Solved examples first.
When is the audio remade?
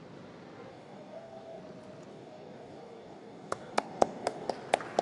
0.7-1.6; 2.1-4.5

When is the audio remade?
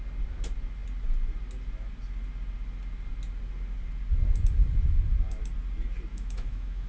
6.1-6.9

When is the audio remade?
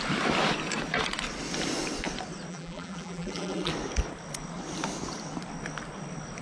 2.5-3.7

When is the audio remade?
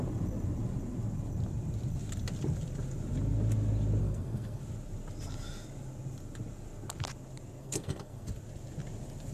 4.0-4.6; 7.6-8.3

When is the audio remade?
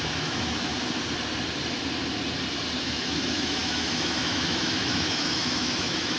0.0-0.7; 2.8-6.2